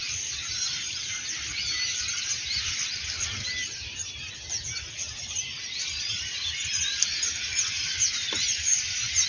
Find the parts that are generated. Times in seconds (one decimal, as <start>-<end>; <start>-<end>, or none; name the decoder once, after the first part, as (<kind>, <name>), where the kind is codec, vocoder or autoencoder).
none